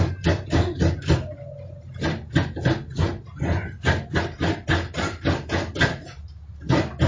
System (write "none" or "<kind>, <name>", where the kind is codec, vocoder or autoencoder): none